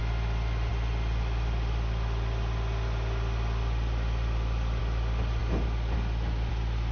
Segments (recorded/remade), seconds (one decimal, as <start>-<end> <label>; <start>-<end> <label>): 0.0-6.9 recorded